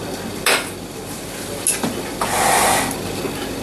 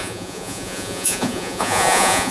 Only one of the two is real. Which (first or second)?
first